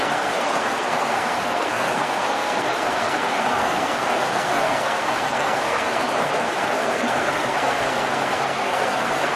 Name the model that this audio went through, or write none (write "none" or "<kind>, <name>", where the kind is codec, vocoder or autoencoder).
codec, SNAC